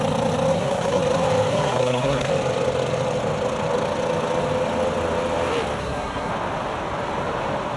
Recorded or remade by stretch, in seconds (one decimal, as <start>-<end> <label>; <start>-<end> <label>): 0.0-0.5 recorded; 0.5-1.0 remade; 1.0-1.5 recorded; 1.5-2.3 remade; 2.3-5.8 recorded; 5.8-6.3 remade; 6.3-7.8 recorded